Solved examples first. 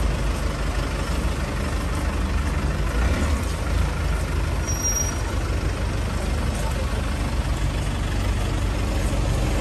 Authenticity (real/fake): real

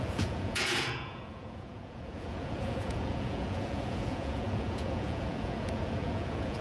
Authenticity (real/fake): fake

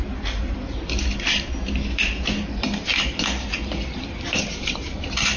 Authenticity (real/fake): real